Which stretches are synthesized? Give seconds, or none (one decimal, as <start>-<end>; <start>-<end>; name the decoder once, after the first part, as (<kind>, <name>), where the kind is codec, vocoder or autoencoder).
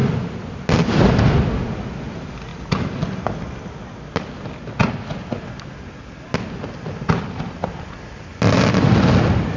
none